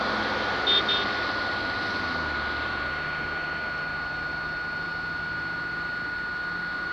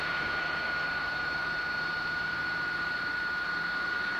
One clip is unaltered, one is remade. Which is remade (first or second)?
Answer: second